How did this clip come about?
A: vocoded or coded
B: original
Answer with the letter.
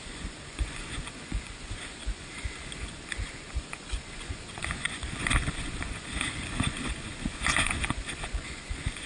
A